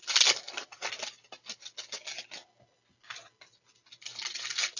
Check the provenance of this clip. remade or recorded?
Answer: recorded